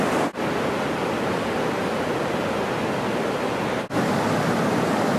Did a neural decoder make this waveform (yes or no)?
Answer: no